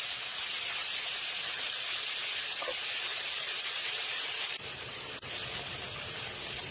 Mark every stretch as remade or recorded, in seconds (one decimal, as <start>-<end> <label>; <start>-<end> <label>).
0.0-0.8 recorded; 0.8-1.4 remade; 1.4-3.1 recorded; 3.1-5.0 remade; 5.0-6.7 recorded